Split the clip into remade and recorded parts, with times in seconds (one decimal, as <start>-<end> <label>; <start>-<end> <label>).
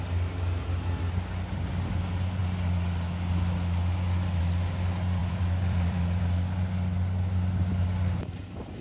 0.0-5.2 recorded; 5.2-6.2 remade; 6.2-8.8 recorded